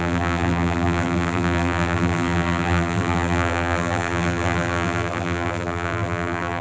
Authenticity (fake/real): fake